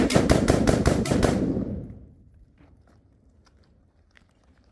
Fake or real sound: fake